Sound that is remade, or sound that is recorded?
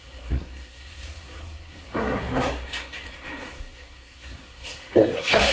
remade